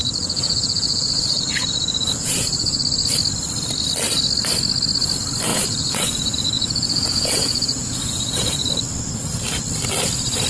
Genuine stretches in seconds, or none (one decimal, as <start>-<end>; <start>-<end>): 2.8-5.5; 8.7-10.5